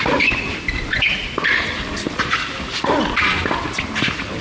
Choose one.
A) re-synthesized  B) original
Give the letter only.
B